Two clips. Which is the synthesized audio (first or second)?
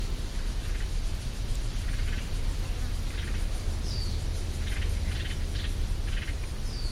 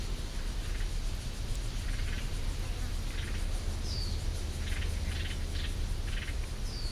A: first